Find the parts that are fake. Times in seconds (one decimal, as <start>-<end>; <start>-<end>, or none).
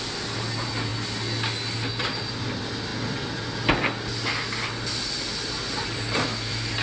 0.0-0.9; 1.9-2.9; 5.4-6.8